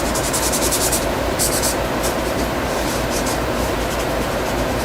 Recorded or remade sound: remade